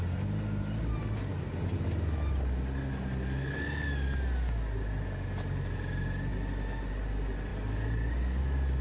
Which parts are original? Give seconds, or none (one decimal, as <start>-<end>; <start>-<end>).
0.0-8.8